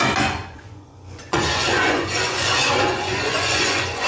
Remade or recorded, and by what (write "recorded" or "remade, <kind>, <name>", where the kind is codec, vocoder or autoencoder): remade, vocoder, Vocos